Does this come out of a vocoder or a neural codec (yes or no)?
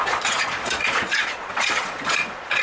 yes